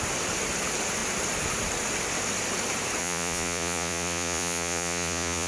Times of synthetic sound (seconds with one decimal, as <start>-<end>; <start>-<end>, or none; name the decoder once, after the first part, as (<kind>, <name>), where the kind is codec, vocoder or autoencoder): 3.0-5.5 (vocoder, Vocos)